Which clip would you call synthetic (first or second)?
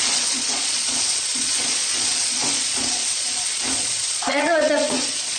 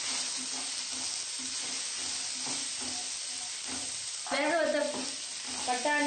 first